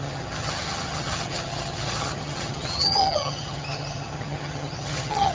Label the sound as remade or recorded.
remade